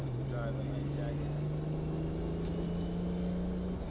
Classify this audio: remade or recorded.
recorded